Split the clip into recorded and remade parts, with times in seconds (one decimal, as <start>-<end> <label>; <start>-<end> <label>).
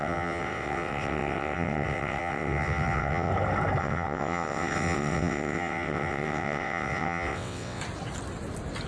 0.0-3.3 remade; 3.3-3.8 recorded; 3.8-7.8 remade; 7.8-8.9 recorded